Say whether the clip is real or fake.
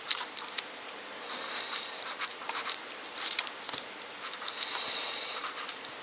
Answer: fake